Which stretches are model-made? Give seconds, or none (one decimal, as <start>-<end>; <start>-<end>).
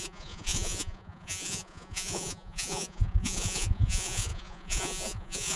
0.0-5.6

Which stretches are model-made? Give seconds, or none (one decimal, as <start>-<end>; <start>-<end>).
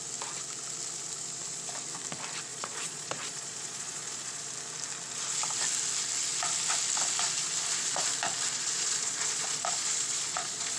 2.5-4.5; 7.4-8.0; 8.5-10.8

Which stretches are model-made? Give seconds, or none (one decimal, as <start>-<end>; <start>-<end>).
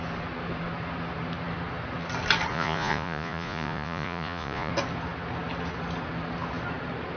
2.5-4.7